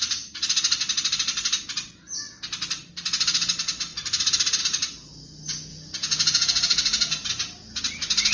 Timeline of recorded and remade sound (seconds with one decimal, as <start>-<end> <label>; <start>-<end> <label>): 0.0-5.7 recorded; 5.7-7.3 remade; 7.3-8.3 recorded